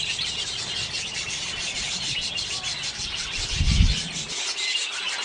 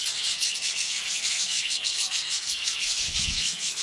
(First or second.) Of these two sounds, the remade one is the second